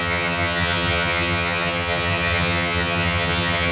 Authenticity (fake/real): fake